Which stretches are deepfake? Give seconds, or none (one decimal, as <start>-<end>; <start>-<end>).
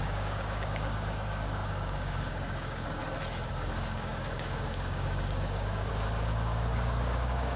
0.0-3.0; 3.5-7.6